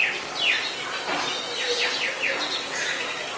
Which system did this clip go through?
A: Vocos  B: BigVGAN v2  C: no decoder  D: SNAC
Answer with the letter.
C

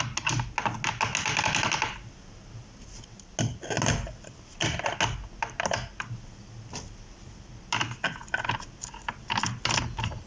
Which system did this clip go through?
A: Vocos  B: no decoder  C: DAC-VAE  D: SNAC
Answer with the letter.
B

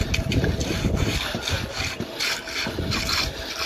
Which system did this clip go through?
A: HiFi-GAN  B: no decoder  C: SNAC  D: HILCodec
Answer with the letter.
B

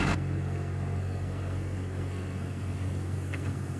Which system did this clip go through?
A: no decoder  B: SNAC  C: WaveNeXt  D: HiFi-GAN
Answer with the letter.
B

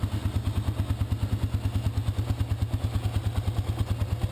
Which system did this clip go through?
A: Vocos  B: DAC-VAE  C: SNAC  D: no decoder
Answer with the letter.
D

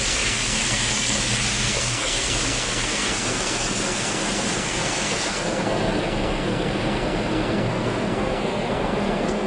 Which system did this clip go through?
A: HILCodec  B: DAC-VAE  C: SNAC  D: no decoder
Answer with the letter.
C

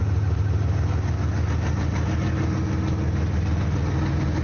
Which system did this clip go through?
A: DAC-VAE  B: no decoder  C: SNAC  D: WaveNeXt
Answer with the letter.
B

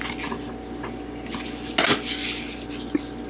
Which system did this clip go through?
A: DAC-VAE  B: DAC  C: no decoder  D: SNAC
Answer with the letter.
C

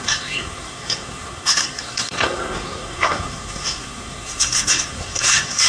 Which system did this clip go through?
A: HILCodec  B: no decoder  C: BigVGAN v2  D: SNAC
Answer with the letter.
D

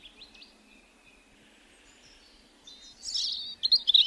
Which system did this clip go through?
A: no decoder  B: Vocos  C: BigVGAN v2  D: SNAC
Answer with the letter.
A